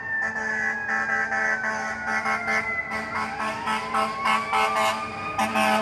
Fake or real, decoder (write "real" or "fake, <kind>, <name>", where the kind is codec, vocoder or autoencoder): real